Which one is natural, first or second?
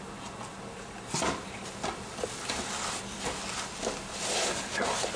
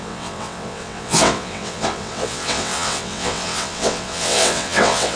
first